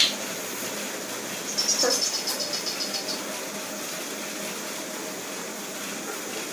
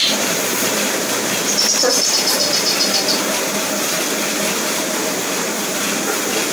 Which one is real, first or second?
first